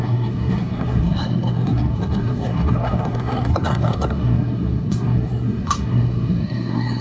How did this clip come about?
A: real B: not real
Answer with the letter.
B